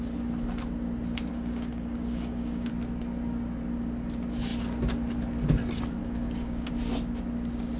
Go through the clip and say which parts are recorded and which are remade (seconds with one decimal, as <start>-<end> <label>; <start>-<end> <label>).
0.0-1.3 recorded; 1.3-2.7 remade; 2.7-6.0 recorded; 6.0-6.7 remade; 6.7-7.8 recorded